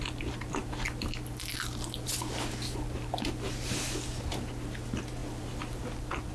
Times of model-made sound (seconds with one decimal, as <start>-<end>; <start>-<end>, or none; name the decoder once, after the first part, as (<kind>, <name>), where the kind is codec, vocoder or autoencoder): none